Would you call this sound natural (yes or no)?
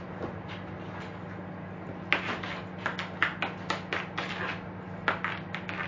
yes